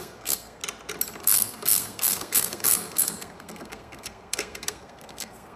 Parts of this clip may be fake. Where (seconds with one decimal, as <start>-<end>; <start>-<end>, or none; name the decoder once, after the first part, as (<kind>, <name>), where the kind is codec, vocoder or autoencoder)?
0.0-0.6 (codec, SNAC); 1.2-5.6